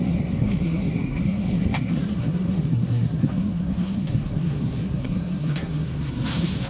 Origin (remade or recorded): remade